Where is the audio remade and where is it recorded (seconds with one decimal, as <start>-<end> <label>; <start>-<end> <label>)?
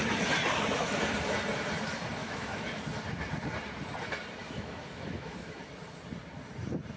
0.0-2.2 recorded; 2.2-2.8 remade; 2.8-4.4 recorded; 4.4-5.6 remade; 5.6-7.0 recorded